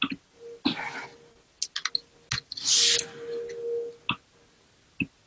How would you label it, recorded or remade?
recorded